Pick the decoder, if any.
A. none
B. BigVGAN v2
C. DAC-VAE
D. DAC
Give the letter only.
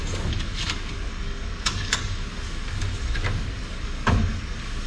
D